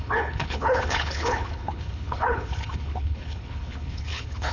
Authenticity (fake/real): fake